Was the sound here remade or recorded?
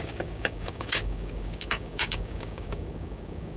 remade